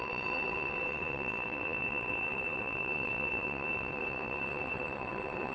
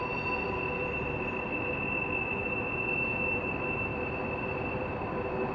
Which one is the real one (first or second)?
second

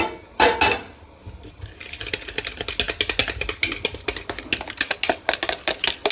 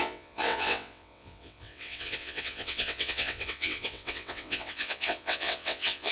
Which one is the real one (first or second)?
first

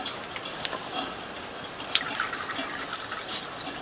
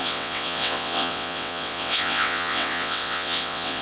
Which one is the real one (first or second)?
first